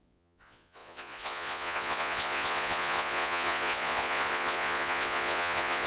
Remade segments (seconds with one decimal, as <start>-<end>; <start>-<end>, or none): 0.0-5.9